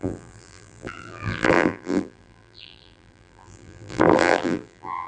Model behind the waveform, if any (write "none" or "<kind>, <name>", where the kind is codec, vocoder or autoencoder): vocoder, BigVGAN v2